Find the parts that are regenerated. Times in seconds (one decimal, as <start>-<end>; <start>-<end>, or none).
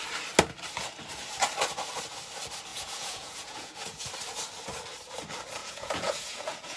2.7-4.1; 5.6-6.8